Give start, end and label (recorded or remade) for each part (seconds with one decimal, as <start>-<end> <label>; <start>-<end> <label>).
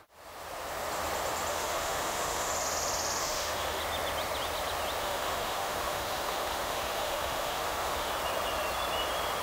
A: 0.0-1.5 recorded; 1.5-2.5 remade; 2.5-3.2 recorded; 3.2-3.8 remade; 3.8-5.0 recorded; 5.0-8.1 remade; 8.1-9.4 recorded